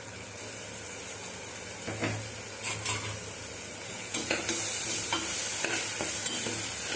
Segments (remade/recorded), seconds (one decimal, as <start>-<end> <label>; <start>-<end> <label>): 0.0-3.9 recorded; 3.9-4.4 remade; 4.4-7.0 recorded